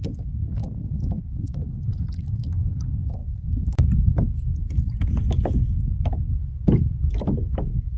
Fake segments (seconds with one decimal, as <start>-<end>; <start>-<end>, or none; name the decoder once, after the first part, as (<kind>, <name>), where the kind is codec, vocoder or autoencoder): 0.0-4.5 (codec, DAC); 6.1-8.0